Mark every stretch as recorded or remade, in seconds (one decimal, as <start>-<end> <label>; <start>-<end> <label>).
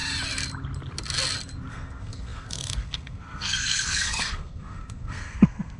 0.0-1.7 recorded; 1.7-5.8 remade